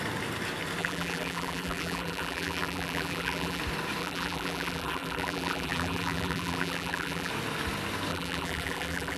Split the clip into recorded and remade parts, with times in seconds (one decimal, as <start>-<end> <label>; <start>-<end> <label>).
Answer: 0.0-0.8 recorded; 0.8-3.6 remade; 3.6-4.0 recorded; 4.0-7.3 remade; 7.3-8.1 recorded; 8.1-9.2 remade

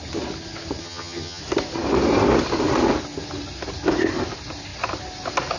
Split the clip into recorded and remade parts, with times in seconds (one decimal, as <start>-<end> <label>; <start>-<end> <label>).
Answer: 0.0-0.8 recorded; 0.8-1.4 remade; 1.4-5.6 recorded

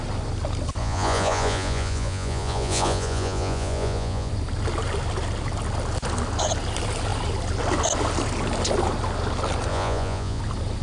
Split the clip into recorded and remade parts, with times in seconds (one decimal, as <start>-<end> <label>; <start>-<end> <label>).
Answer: 0.0-0.8 recorded; 0.8-4.3 remade; 4.3-9.7 recorded; 9.7-10.4 remade; 10.4-10.8 recorded

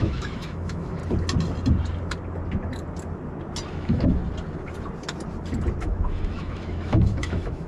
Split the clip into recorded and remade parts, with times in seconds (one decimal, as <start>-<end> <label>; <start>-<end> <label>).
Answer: 0.0-1.0 remade; 1.0-3.7 recorded; 3.7-4.2 remade; 4.2-5.8 recorded; 5.8-7.7 remade